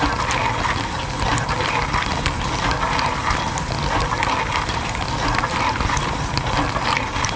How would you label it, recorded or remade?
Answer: recorded